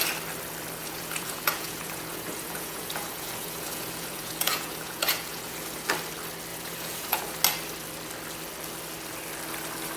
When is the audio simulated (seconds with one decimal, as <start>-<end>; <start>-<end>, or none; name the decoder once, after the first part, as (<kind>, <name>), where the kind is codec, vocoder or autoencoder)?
0.8-5.9 (vocoder, Vocos); 6.5-7.2